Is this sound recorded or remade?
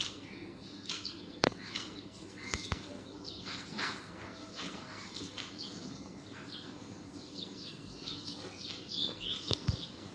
remade